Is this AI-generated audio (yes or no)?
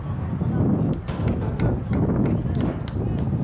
no